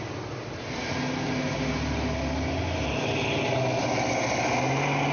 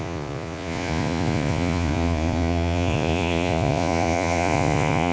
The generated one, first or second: second